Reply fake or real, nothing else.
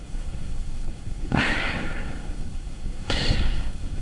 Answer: fake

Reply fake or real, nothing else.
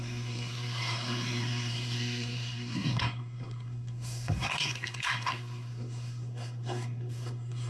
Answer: fake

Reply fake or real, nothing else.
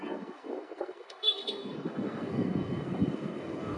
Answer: fake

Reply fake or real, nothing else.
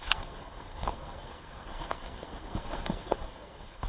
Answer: fake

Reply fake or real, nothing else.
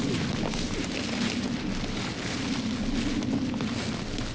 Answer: real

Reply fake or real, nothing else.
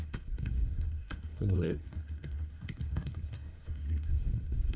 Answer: fake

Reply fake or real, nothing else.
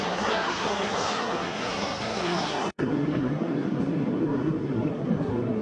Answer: fake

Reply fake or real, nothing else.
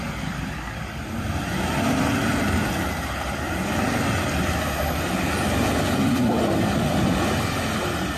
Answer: real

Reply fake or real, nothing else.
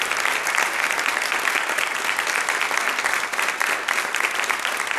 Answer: real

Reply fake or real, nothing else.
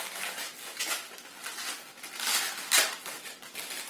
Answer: real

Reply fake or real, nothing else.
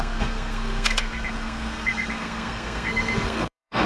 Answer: fake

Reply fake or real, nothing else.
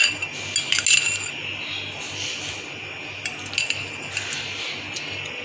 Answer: real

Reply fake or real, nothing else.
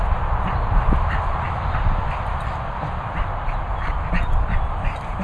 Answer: real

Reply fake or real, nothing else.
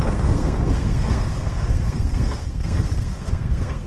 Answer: fake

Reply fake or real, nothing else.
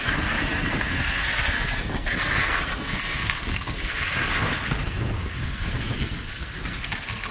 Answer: fake